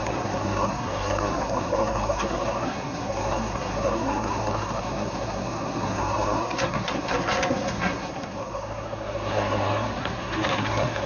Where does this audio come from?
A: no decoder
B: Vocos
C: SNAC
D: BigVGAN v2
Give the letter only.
C